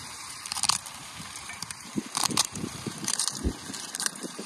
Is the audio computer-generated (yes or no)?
yes